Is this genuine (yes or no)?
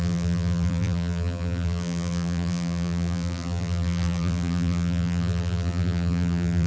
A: no